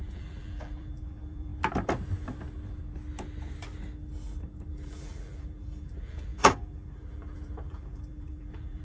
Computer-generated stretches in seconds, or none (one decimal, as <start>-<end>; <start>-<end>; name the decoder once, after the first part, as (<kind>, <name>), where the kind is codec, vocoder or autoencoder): 0.0-1.5 (vocoder, BigVGAN v2); 4.7-8.8